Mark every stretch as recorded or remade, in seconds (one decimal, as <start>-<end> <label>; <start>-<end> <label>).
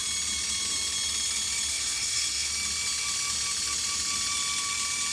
0.0-1.7 recorded; 1.7-2.5 remade; 2.5-5.1 recorded